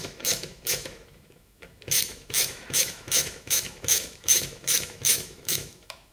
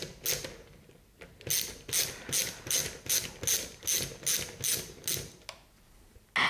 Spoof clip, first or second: first